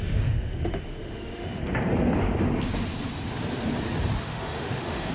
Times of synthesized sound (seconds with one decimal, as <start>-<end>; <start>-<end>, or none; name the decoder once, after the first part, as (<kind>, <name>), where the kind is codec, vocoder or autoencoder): 0.0-1.6 (autoencoder, DAC-VAE); 4.2-5.1